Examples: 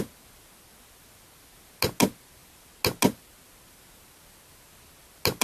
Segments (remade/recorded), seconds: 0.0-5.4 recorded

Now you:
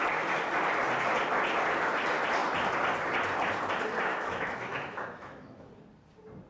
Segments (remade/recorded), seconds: 0.0-4.1 recorded; 4.1-5.7 remade; 5.7-6.5 recorded